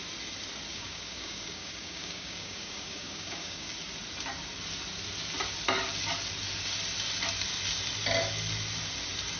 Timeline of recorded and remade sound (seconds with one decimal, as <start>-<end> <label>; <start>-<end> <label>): 0.0-0.7 recorded; 0.7-3.7 remade; 3.7-9.4 recorded

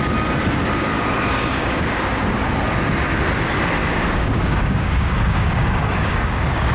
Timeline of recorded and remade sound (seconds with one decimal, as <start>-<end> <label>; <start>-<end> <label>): 0.0-1.5 recorded; 1.5-2.2 remade; 2.2-3.8 recorded; 3.8-6.7 remade

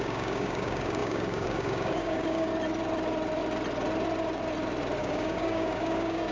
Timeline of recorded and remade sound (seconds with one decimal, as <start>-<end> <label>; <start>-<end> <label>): 0.0-2.5 remade; 2.5-5.0 recorded; 5.0-6.3 remade

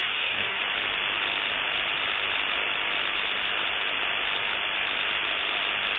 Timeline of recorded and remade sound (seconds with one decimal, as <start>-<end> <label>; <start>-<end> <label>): 0.0-0.6 remade; 0.6-6.0 recorded